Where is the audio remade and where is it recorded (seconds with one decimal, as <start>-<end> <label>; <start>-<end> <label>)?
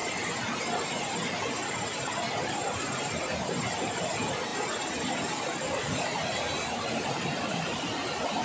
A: 0.0-8.4 recorded